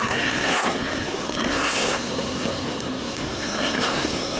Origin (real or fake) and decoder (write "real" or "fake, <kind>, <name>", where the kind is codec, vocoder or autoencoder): fake, codec, SNAC